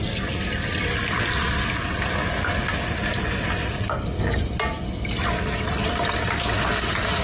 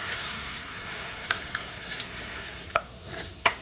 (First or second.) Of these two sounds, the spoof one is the second